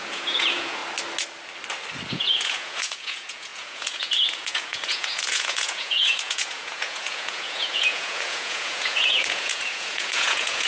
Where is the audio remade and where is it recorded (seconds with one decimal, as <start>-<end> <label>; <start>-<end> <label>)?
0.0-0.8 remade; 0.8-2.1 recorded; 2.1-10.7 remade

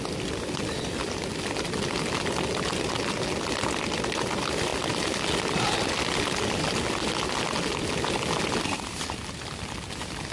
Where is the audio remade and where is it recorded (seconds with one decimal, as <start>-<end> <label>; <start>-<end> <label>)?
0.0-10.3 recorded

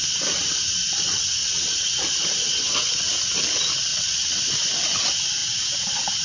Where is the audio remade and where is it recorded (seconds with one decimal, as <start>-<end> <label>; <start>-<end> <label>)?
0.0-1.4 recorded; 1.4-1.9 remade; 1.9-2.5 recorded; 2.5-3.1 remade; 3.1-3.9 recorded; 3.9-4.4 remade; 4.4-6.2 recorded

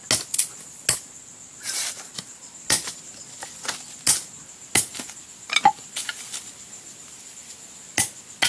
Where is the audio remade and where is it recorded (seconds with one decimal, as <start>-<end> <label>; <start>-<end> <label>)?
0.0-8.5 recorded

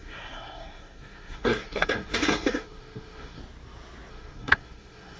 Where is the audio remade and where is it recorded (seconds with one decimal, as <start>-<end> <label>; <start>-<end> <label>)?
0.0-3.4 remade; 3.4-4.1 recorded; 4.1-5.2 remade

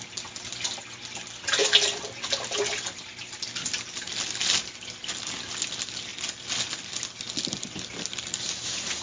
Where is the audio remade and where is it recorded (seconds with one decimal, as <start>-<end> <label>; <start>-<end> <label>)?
0.0-9.0 recorded

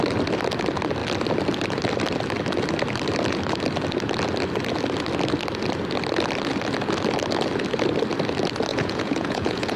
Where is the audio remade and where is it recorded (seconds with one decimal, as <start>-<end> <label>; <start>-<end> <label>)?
0.0-8.7 recorded; 8.7-9.8 remade